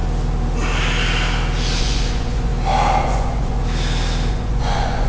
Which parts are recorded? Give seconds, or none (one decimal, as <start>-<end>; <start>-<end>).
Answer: 0.0-1.8; 2.5-3.0; 3.6-4.3